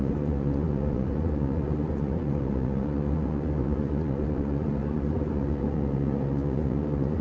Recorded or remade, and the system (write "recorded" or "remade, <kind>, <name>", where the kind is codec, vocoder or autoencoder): remade, vocoder, Vocos